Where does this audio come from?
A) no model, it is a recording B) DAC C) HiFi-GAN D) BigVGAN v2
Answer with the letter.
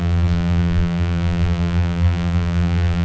D